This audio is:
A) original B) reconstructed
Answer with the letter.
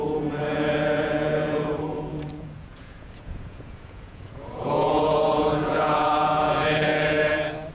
B